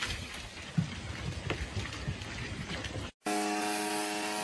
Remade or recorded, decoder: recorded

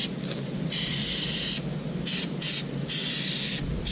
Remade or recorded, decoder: recorded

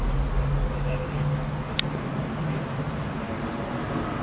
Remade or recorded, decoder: recorded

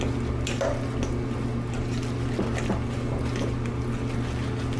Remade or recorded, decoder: recorded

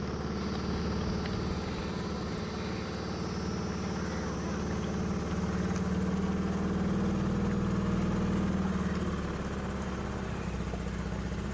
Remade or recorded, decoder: recorded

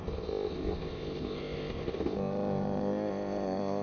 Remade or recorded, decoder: remade, codec, ZipCodec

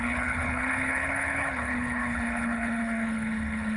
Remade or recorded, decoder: remade, codec, HILCodec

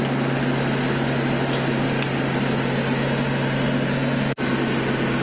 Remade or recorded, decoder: recorded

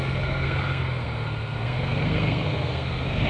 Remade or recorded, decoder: remade, codec, SNAC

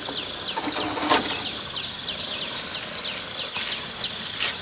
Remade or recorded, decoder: recorded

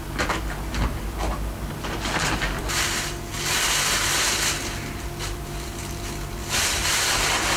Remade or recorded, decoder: recorded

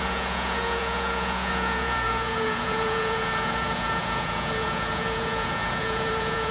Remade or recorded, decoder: remade, vocoder, Vocos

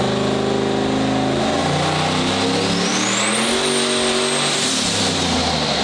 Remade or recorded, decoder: recorded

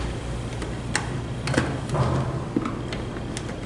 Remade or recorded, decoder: recorded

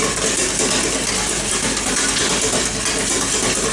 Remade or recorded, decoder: recorded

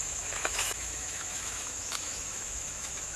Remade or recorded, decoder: remade, autoencoder, DAC-VAE